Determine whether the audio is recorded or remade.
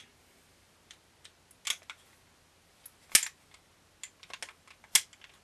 recorded